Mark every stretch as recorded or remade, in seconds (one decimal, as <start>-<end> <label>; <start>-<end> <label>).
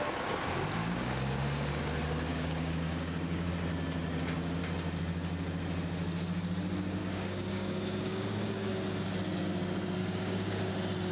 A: 0.0-0.8 recorded; 0.8-1.8 remade; 1.8-2.3 recorded; 2.3-3.5 remade; 3.5-7.0 recorded; 7.0-8.7 remade; 8.7-10.0 recorded; 10.0-10.7 remade; 10.7-11.1 recorded